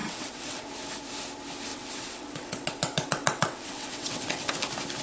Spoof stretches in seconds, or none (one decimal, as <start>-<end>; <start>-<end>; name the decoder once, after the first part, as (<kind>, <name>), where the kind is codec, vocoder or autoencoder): 0.0-0.6 (vocoder, WaveNeXt); 1.7-4.5